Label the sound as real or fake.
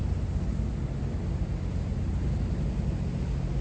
real